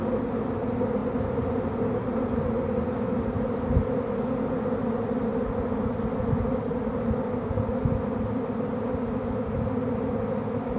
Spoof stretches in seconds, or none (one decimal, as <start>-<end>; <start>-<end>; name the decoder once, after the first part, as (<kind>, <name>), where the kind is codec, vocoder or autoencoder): none